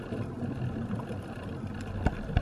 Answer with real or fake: real